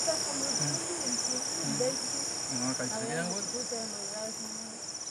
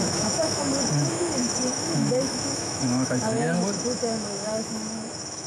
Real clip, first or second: first